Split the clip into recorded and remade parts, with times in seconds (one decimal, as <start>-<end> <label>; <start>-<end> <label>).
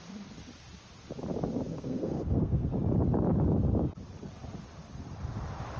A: 0.0-1.7 recorded; 1.7-2.7 remade; 2.7-5.8 recorded